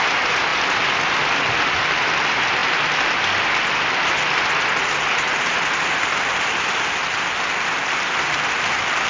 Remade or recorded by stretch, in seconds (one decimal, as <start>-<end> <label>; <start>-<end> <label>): 0.0-9.1 recorded